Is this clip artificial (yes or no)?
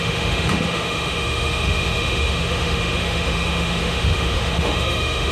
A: yes